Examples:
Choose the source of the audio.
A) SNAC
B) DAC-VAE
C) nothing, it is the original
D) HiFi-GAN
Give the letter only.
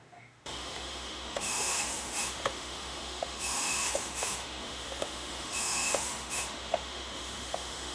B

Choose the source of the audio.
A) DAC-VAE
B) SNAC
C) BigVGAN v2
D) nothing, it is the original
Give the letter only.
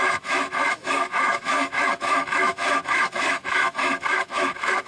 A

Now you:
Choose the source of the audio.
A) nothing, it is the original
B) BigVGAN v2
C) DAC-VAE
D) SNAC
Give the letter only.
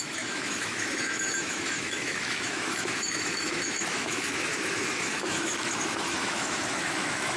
C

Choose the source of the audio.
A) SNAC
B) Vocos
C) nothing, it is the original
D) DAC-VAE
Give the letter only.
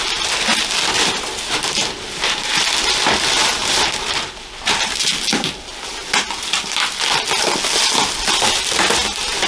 C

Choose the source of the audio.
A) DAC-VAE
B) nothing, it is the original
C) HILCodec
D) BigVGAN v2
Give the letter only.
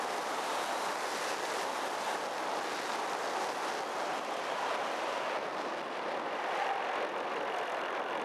B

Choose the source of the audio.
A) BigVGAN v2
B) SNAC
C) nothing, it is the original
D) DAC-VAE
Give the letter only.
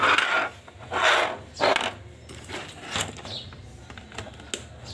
C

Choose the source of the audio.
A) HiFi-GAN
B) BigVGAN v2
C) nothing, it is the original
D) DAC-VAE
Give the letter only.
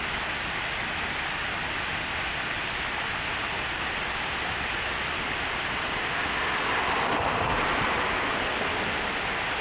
C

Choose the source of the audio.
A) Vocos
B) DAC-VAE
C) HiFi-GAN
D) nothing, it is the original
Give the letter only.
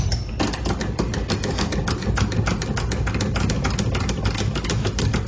D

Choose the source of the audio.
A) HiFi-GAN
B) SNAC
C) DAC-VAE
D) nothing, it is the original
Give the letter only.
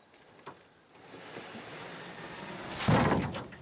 D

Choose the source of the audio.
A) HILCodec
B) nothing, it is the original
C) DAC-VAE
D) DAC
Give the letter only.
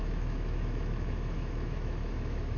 C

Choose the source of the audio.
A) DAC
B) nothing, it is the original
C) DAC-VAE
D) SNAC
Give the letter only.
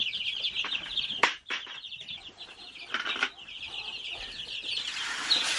B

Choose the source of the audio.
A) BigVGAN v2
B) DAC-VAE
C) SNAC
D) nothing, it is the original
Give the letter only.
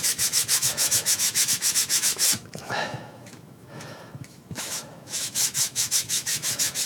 B